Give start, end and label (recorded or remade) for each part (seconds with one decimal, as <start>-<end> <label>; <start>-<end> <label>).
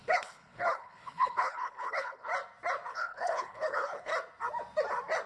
0.0-2.3 remade; 2.3-2.9 recorded; 2.9-4.1 remade; 4.1-5.3 recorded